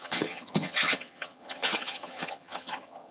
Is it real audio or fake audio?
fake